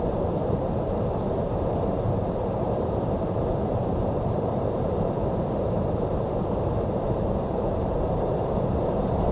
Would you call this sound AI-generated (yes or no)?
yes